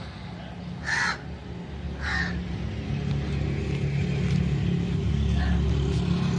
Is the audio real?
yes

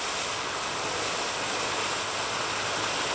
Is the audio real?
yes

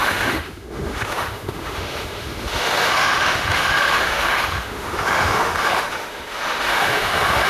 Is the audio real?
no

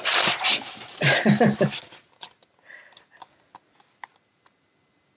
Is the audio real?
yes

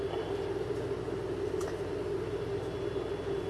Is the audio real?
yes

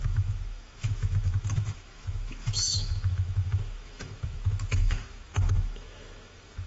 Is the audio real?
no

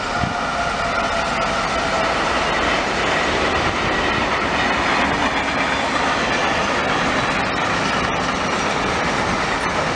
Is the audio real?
yes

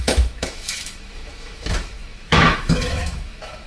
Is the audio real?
no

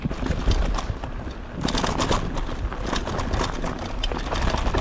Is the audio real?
yes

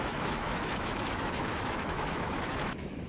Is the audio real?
no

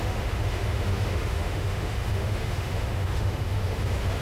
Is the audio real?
no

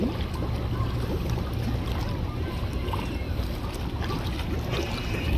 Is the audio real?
yes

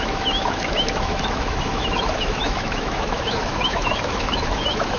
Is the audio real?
no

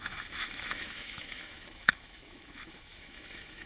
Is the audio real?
no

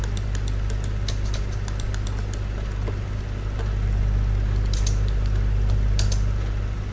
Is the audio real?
yes